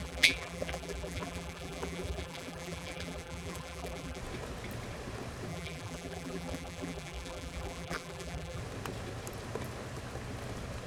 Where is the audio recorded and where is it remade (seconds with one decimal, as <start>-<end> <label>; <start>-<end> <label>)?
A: 0.0-4.2 remade; 4.2-5.5 recorded; 5.5-8.6 remade; 8.6-10.9 recorded